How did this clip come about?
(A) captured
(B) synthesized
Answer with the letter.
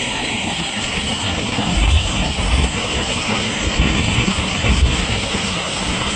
B